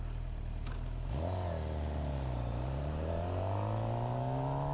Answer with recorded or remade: recorded